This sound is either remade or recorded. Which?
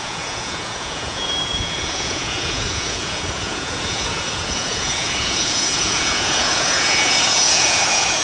remade